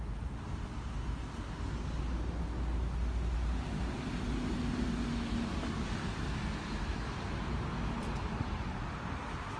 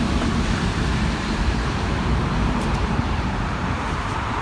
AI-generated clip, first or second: second